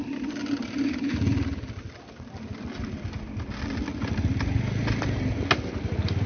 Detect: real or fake real